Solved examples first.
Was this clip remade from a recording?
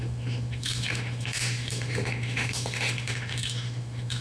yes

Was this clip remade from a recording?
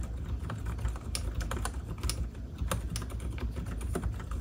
no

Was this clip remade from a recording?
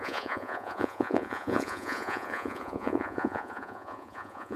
yes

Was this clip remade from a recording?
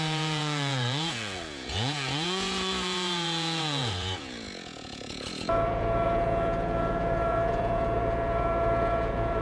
yes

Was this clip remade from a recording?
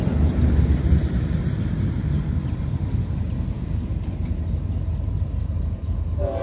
no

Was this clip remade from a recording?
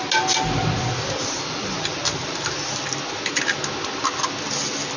no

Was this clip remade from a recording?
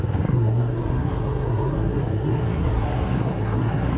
yes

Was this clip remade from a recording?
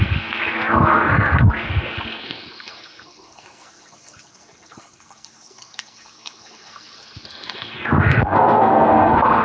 yes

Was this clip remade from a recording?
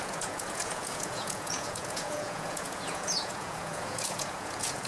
yes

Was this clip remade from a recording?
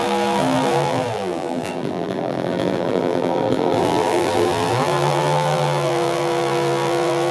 yes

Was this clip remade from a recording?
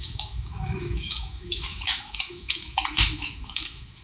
yes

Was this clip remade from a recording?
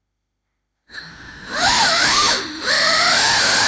yes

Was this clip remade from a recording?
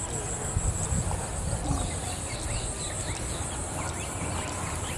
no